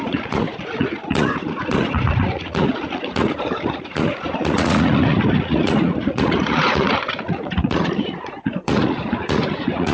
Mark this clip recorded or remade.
remade